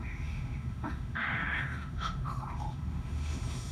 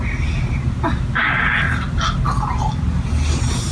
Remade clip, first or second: first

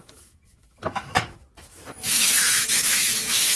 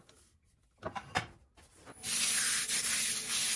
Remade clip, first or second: first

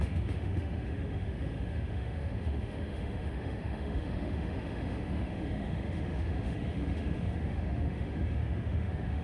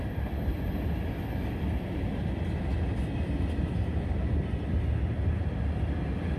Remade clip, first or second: first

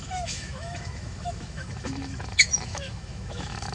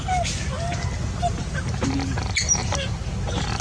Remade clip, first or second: first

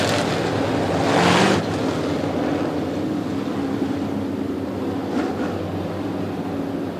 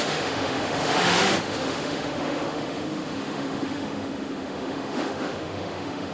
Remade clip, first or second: second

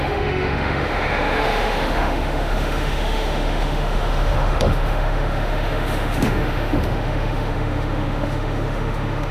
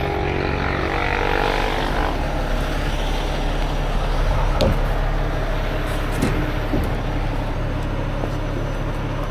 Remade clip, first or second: first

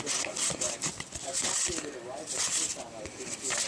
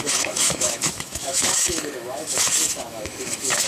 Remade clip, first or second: second